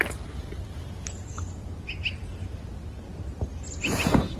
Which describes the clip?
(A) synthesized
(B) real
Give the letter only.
A